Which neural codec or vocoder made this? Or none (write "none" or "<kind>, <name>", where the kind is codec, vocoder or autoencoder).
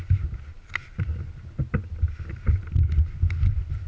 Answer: none